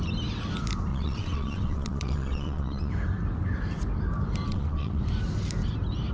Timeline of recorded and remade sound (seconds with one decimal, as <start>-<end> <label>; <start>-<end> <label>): 0.0-0.9 recorded; 0.9-2.9 remade; 2.9-4.5 recorded; 4.5-5.0 remade; 5.0-6.1 recorded